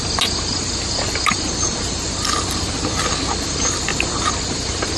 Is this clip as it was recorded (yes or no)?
yes